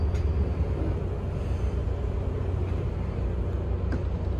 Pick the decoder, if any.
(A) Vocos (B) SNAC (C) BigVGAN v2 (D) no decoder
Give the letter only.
D